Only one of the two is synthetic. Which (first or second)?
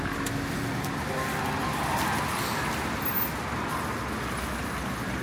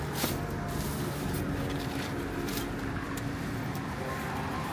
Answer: second